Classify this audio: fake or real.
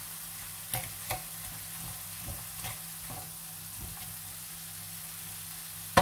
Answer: real